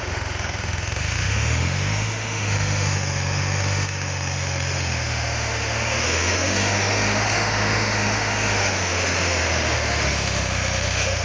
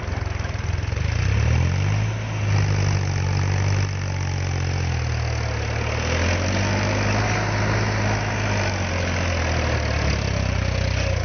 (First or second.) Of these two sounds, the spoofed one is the first